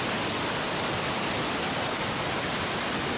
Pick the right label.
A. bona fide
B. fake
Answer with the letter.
A